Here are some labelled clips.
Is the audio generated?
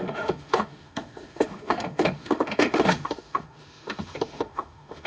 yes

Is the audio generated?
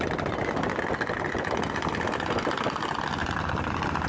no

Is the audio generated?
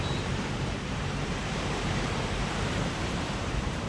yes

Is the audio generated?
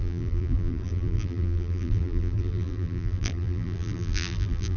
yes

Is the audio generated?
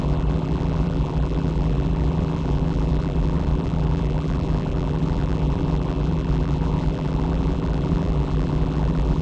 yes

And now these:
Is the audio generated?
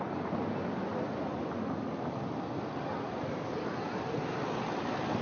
no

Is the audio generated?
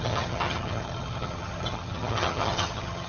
yes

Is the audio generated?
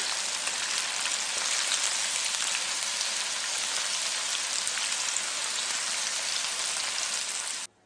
no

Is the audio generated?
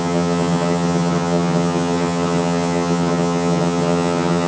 yes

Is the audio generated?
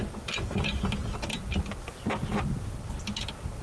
yes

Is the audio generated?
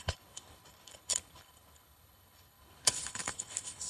yes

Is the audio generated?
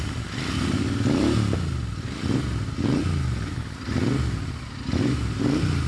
no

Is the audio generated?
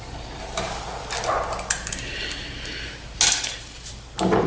no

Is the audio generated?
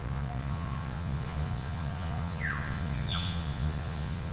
yes